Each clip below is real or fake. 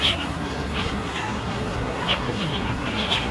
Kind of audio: fake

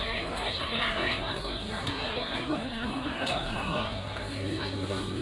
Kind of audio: fake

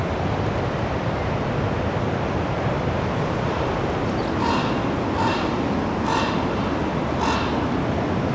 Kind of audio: real